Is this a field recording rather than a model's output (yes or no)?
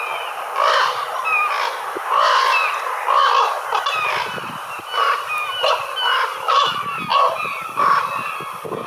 yes